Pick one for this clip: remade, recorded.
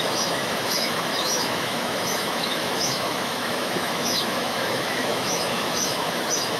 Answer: remade